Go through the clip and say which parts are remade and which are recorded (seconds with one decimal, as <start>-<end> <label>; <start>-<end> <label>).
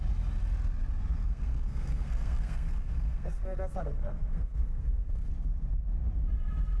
0.0-1.2 recorded; 1.2-5.3 remade; 5.3-6.8 recorded